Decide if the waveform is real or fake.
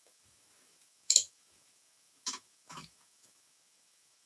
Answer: fake